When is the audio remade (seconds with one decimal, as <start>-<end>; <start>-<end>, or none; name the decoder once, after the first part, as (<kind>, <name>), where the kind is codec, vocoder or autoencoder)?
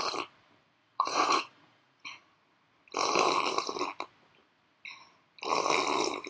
0.8-2.2 (vocoder, Vocos)